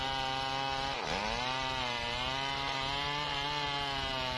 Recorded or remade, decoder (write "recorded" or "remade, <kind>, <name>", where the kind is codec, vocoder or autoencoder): recorded